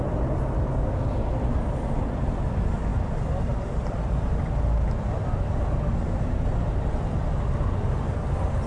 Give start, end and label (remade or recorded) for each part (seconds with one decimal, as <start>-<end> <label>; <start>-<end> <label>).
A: 0.0-2.9 recorded; 2.9-4.0 remade; 4.0-8.7 recorded